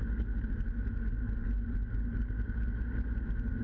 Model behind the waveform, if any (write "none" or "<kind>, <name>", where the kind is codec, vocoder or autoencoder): none